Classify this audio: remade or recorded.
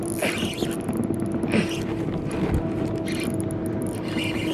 recorded